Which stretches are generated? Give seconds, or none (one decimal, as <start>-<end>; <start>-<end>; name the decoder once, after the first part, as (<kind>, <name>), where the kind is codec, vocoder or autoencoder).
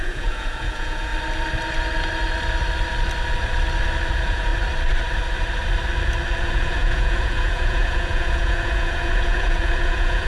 0.0-1.1 (vocoder, Vocos); 4.1-4.5; 6.4-10.3